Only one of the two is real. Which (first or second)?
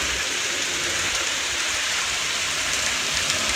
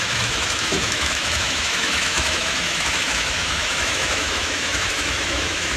first